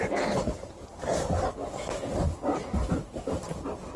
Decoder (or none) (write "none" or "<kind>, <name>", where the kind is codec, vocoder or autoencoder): none